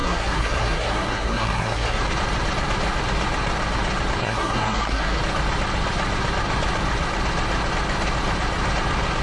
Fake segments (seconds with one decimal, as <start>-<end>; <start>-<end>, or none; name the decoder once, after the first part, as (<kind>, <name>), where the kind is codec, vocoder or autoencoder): 0.0-2.0 (codec, SNAC); 4.2-5.2